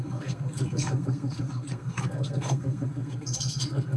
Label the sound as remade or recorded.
remade